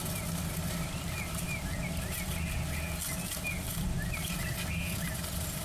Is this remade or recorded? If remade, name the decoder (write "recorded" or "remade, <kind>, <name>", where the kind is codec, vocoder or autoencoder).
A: recorded